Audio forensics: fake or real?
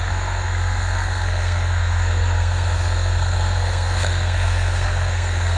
fake